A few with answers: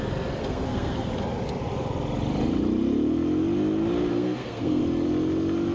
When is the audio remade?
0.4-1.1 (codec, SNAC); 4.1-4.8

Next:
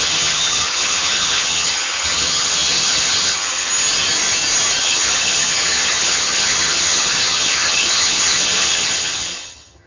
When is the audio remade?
0.0-3.7 (vocoder, HiFi-GAN); 4.8-9.9

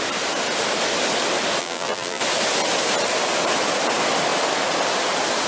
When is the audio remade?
1.6-2.2 (vocoder, BigVGAN v2)

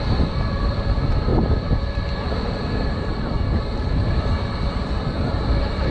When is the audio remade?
0.0-5.9 (vocoder, BigVGAN v2)

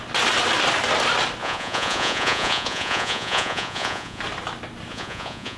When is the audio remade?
1.4-4.2 (vocoder, Vocos); 4.9-5.6

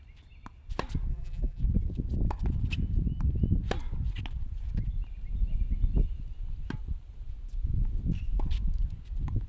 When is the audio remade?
1.1-1.6 (vocoder, BigVGAN v2)

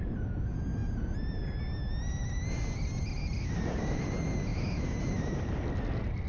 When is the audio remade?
none

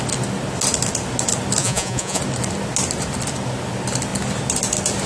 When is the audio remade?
1.6-2.2 (vocoder, Vocos)